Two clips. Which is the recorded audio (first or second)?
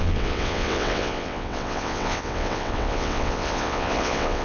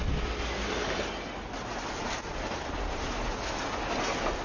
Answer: second